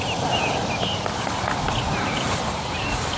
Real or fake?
real